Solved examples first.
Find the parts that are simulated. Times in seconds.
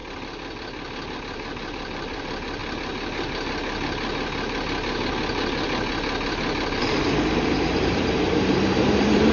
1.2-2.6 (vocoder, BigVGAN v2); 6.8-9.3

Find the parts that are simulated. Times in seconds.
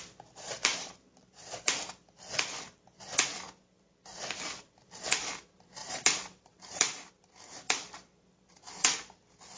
0.7-1.9 (vocoder, BigVGAN v2); 5.8-7.1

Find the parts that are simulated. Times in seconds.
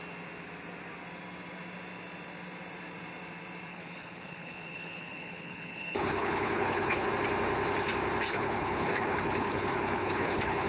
3.7-7.1 (codec, HILCodec); 8.3-10.7